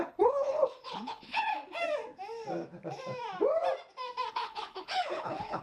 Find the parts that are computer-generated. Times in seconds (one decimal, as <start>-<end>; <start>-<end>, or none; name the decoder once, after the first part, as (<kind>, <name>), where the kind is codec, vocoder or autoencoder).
0.0-1.5 (codec, HILCodec); 4.3-5.6